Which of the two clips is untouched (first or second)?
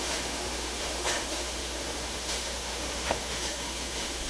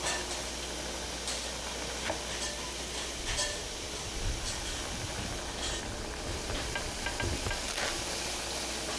second